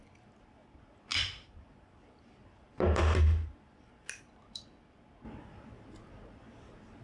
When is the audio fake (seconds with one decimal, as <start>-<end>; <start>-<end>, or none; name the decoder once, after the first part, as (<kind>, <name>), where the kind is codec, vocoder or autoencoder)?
1.1-5.0 (vocoder, BigVGAN v2)